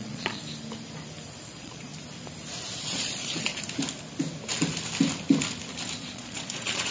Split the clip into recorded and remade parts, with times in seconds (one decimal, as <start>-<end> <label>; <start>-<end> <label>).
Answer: 0.0-0.4 remade; 0.4-1.5 recorded; 1.5-1.9 remade; 1.9-2.8 recorded; 2.8-3.5 remade; 3.5-6.0 recorded; 6.0-6.9 remade